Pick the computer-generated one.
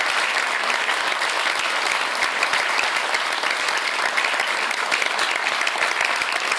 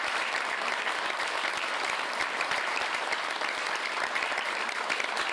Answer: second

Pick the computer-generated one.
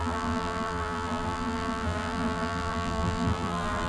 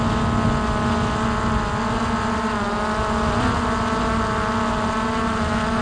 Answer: first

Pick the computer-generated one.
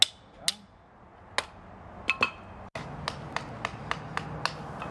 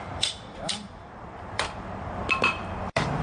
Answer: second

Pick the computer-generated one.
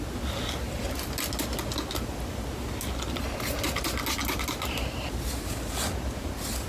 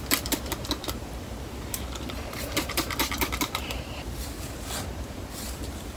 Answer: second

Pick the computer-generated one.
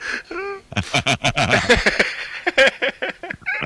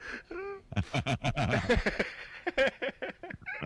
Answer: second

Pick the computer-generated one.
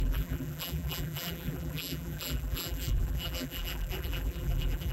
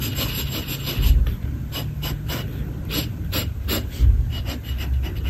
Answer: first